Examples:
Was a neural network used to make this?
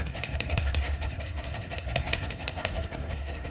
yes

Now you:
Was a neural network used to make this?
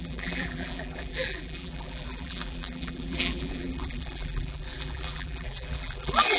yes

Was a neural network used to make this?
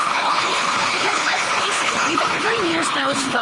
yes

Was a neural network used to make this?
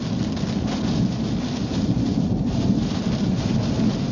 no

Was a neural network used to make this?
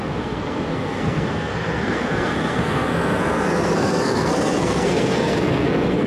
yes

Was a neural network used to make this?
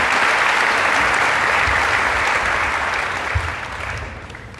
no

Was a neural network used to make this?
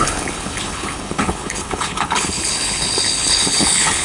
yes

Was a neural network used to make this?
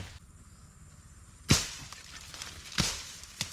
no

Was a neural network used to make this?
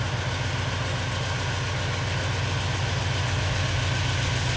no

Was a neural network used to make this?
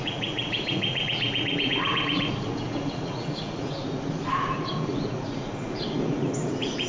yes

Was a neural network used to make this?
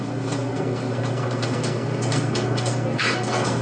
yes